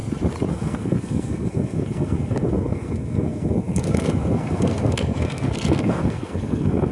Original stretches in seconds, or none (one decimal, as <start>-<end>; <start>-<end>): 0.0-0.5